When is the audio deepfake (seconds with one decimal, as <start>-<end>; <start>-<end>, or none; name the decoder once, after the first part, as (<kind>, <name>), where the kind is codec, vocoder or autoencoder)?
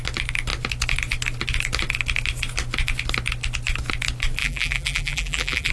4.4-5.7 (vocoder, BigVGAN v2)